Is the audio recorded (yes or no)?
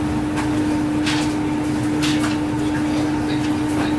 yes